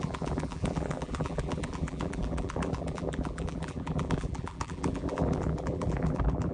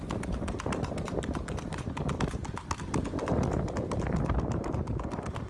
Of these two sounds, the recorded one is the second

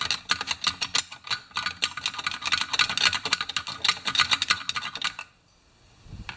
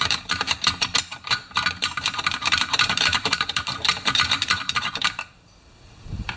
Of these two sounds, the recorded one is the first